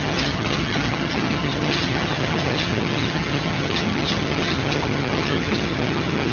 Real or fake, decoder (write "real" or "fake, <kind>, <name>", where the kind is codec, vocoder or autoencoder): fake, vocoder, HiFi-GAN